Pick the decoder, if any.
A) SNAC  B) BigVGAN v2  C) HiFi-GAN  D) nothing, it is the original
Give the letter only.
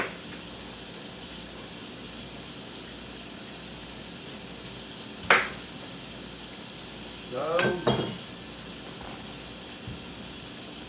D